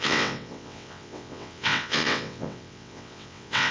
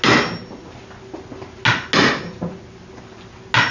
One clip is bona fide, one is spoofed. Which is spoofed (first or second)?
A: first